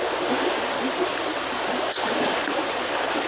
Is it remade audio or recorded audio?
recorded